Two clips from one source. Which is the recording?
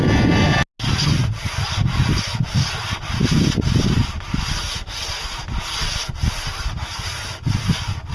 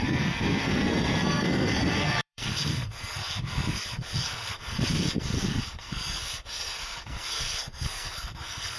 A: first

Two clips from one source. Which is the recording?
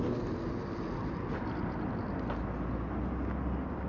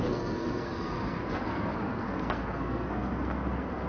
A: first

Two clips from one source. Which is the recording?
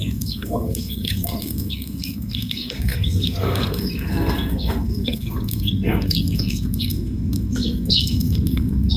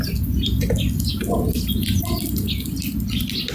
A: second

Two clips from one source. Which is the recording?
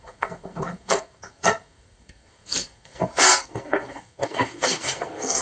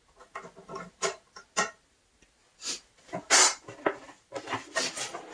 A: second